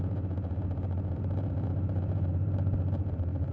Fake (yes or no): yes